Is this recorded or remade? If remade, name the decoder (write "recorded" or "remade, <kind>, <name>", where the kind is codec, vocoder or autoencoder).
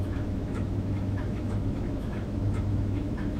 remade, autoencoder, DAC-VAE